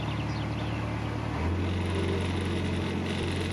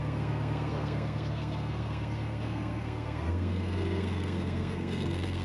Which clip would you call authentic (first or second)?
first